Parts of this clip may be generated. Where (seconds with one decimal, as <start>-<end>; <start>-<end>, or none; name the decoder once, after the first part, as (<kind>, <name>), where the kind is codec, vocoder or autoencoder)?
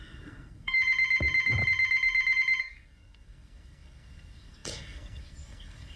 0.0-0.8 (codec, SNAC); 2.6-6.0